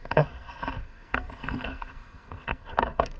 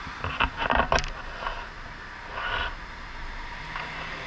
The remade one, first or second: first